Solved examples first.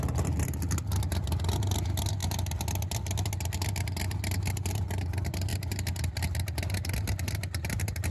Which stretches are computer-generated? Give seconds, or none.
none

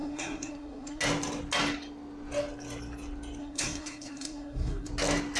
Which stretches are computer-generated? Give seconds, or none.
0.0-1.0 (codec, SNAC); 3.4-4.9

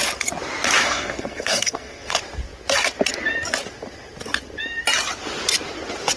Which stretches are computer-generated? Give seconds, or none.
0.8-2.1 (codec, SNAC)

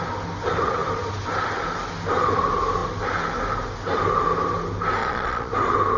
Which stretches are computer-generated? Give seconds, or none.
5.0-5.5 (vocoder, Vocos)

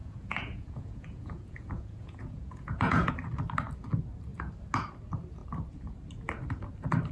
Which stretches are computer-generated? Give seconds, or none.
0.0-3.1 (vocoder, Vocos)

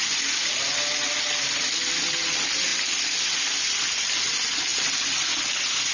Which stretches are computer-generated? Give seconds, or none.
none